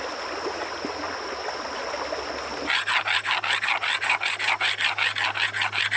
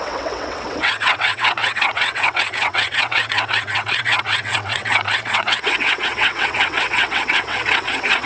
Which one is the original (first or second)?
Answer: first